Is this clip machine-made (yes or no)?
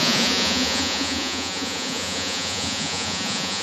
yes